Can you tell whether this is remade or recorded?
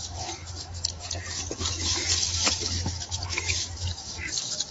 remade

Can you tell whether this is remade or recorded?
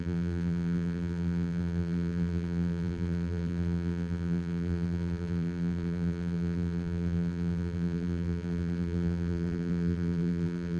remade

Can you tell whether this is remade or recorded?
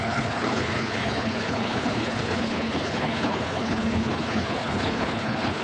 remade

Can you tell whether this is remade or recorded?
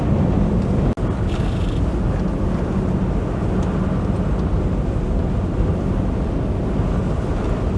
recorded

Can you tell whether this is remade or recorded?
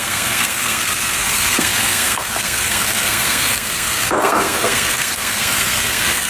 remade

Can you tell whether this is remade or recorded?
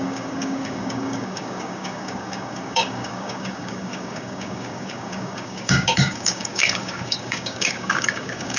remade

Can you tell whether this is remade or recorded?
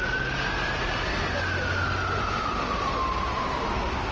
recorded